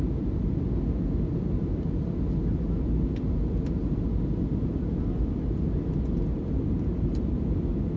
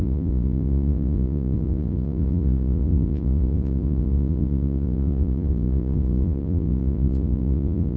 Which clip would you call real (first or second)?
first